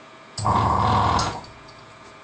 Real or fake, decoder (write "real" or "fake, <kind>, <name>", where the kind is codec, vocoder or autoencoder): fake, vocoder, Vocos